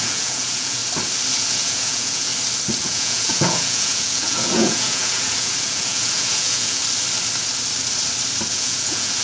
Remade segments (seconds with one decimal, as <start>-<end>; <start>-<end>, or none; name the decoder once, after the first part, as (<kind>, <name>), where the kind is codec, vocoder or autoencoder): 0.0-0.8 (vocoder, Vocos); 1.3-2.3; 2.8-6.8; 8.5-9.2